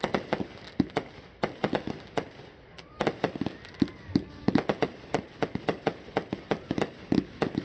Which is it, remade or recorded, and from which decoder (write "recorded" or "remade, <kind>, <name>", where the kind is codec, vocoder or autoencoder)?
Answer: recorded